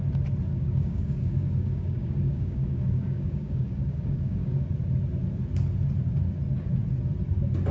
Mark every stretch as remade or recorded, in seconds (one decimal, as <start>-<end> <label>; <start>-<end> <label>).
0.0-0.5 recorded; 0.5-4.6 remade; 4.6-7.7 recorded